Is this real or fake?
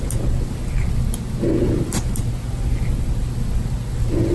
real